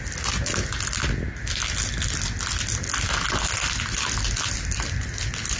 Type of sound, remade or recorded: recorded